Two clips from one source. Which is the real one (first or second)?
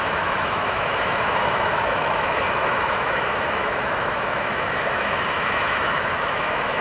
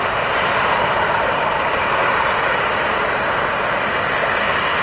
second